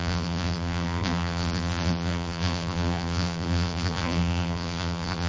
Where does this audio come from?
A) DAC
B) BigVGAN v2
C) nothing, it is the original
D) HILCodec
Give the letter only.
B